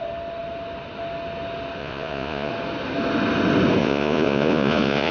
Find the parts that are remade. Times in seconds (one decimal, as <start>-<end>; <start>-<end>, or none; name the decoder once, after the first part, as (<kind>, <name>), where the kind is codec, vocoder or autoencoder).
1.8-2.5 (vocoder, Vocos); 3.8-5.1